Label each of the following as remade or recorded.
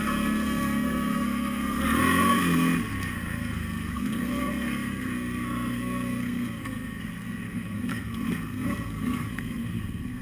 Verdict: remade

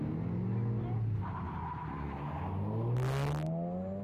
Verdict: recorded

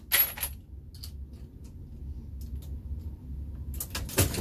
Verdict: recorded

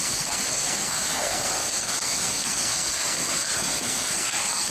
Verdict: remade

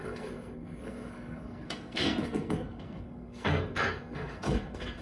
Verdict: remade